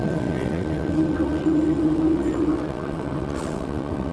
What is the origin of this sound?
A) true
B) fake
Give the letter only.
B